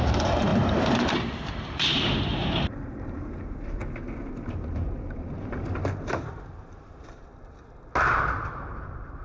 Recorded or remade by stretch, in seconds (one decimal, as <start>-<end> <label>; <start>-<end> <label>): 0.0-3.8 remade; 3.8-4.3 recorded; 4.3-7.3 remade; 7.3-9.2 recorded